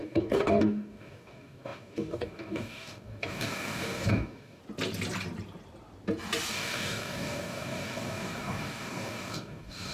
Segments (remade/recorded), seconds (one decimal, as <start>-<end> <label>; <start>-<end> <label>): 0.0-4.6 remade; 4.6-6.5 recorded; 6.5-9.9 remade